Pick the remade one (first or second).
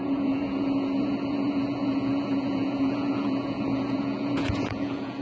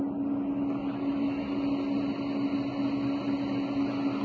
first